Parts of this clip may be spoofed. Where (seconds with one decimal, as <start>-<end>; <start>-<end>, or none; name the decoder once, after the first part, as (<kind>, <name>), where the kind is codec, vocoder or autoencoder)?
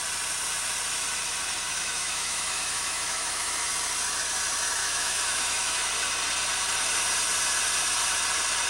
1.7-3.7 (autoencoder, DAC-VAE); 4.8-5.9